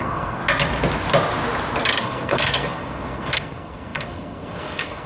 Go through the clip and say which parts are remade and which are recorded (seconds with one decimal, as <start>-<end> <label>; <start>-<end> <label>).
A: 0.0-0.4 remade; 0.4-2.0 recorded; 2.0-5.1 remade